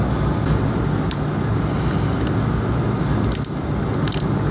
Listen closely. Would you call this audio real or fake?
real